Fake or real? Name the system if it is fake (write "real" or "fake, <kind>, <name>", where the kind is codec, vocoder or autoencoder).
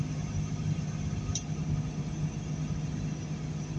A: real